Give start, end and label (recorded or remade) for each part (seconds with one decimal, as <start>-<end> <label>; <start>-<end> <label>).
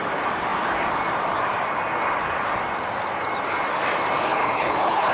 0.0-4.3 recorded; 4.3-5.1 remade